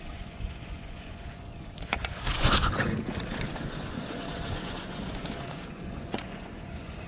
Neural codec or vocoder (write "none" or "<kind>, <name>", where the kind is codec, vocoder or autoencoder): vocoder, Vocos